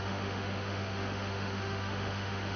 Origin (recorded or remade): remade